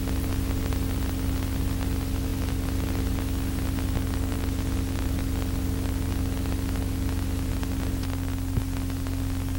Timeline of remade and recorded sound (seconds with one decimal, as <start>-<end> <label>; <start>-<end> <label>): 0.0-9.6 recorded

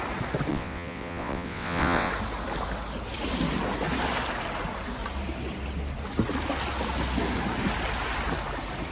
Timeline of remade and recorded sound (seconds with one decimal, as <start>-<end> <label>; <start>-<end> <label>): 0.0-0.5 recorded; 0.5-2.1 remade; 2.1-8.9 recorded

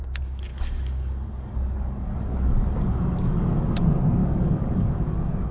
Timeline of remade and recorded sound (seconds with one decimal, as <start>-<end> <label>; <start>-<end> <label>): 0.0-0.5 recorded; 0.5-3.8 remade; 3.8-4.2 recorded; 4.2-5.5 remade

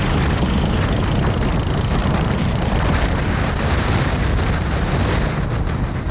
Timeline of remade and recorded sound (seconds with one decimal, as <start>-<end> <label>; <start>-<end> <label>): 0.0-2.0 recorded; 2.0-4.7 remade; 4.7-6.1 recorded

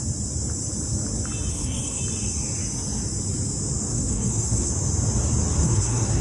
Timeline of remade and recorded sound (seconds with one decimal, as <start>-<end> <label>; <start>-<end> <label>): 0.0-1.5 recorded; 1.5-2.0 remade; 2.0-3.9 recorded; 3.9-4.7 remade; 4.7-5.6 recorded; 5.6-6.2 remade

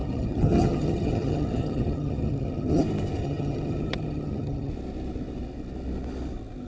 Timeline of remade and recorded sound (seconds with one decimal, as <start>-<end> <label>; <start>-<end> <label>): 0.0-2.8 remade; 2.8-3.2 recorded; 3.2-4.7 remade; 4.7-6.7 recorded

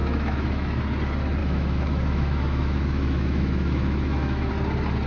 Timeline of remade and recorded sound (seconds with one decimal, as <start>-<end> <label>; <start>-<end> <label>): 0.0-0.8 remade; 0.8-1.4 recorded; 1.4-4.5 remade; 4.5-5.1 recorded